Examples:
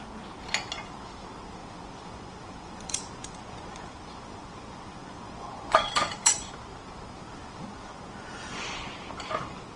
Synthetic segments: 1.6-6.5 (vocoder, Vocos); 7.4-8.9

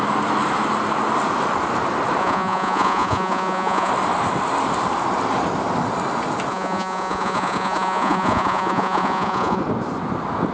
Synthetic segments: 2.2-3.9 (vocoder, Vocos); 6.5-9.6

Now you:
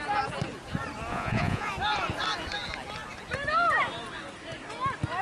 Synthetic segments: 1.1-1.7 (vocoder, Vocos)